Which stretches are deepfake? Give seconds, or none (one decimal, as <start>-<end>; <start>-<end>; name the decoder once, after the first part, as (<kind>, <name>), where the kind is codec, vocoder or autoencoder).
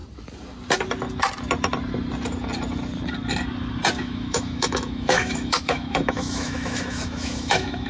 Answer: 4.0-7.9 (autoencoder, DAC-VAE)